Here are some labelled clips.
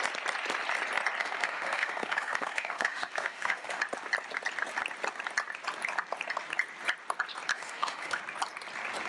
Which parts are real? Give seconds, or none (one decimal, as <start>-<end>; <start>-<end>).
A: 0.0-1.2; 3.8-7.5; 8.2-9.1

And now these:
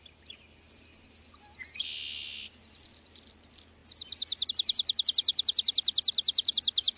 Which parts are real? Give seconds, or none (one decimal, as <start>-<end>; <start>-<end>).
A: 0.0-7.0

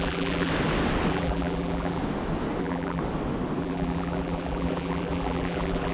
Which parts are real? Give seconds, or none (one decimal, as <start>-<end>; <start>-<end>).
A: 0.5-1.1; 2.0-2.6; 3.0-3.6

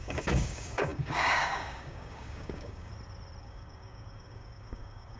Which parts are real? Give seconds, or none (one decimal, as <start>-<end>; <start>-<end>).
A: 2.9-3.4

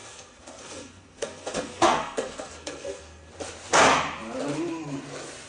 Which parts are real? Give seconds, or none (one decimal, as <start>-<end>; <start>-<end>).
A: 3.3-5.5

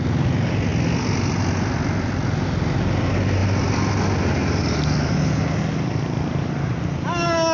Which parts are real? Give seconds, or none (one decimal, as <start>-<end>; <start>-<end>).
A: 0.0-7.5

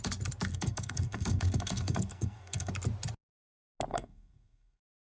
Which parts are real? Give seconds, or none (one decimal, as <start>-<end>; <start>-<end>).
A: 0.0-0.5; 2.7-3.9

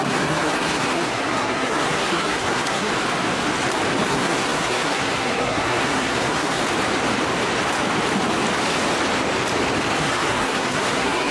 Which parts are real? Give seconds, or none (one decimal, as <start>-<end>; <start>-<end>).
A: 2.9-4.1; 6.6-10.0